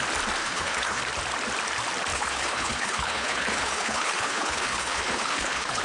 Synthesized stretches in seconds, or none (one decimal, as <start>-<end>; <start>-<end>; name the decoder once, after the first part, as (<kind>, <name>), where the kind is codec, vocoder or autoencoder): 0.4-1.0 (codec, HILCodec); 2.1-5.8

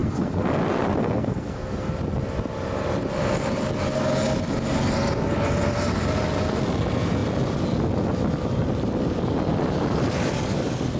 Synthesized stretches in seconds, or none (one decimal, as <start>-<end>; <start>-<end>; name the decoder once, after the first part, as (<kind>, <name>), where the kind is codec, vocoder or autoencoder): 0.0-0.6 (codec, SNAC); 1.0-1.9

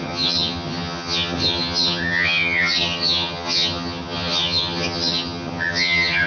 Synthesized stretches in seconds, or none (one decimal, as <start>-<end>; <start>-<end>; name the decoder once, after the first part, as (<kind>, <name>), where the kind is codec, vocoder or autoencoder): 0.0-6.3 (vocoder, HiFi-GAN)

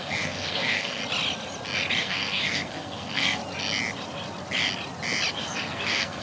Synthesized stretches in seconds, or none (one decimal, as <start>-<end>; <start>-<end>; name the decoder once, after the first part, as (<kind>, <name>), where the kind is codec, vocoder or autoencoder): 0.0-1.0 (codec, SNAC); 2.0-3.4; 5.3-6.2

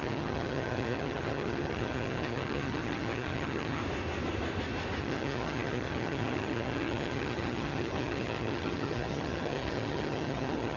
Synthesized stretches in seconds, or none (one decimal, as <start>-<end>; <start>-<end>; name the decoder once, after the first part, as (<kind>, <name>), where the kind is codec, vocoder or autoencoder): 0.0-3.8 (vocoder, HiFi-GAN); 5.0-10.8

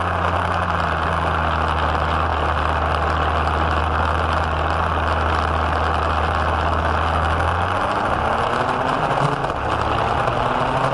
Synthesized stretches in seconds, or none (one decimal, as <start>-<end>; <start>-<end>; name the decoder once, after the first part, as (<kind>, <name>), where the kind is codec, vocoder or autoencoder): none

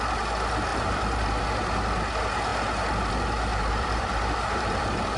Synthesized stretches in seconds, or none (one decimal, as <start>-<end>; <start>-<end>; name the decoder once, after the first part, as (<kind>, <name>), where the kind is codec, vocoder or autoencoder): 0.7-1.4 (vocoder, BigVGAN v2); 3.5-4.8

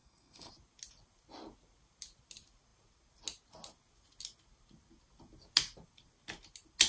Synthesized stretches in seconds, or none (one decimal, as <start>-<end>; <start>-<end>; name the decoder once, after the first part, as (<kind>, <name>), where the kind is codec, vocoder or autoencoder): 0.0-0.5 (codec, SNAC)